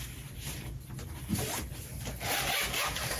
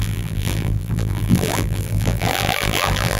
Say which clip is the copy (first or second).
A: second